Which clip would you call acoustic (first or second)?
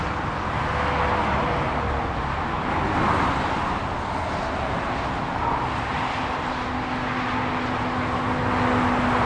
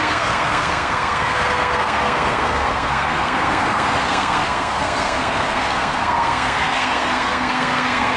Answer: first